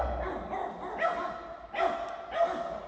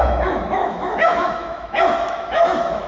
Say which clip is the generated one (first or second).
second